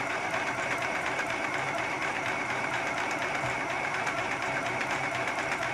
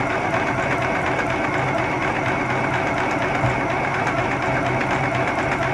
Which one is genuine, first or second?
second